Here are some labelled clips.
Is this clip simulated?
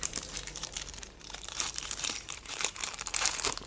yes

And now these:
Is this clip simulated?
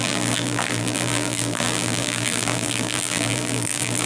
yes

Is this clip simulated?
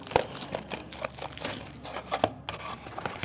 no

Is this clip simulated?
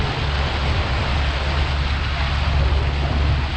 no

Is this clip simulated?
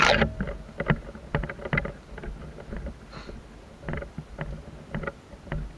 no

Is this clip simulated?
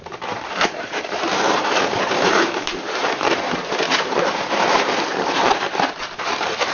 yes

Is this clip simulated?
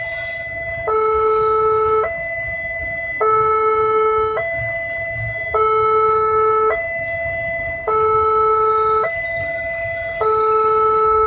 no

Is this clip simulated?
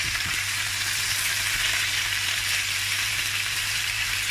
yes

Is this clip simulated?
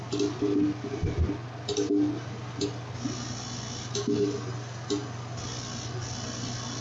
no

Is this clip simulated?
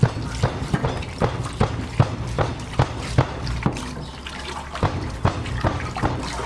no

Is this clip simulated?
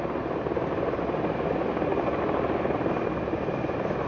no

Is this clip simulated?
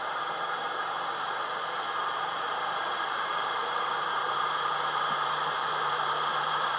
yes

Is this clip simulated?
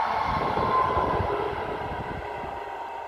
no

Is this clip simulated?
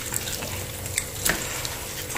no